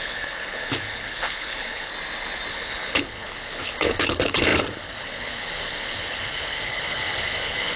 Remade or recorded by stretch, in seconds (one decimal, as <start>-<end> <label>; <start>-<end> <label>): 0.0-1.9 remade; 1.9-2.5 recorded; 2.5-7.8 remade